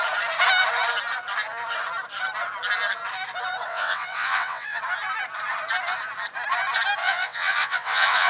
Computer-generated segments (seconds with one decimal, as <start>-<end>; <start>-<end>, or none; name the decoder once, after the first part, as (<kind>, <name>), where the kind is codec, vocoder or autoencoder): 3.7-4.8 (vocoder, WaveNeXt); 7.0-8.3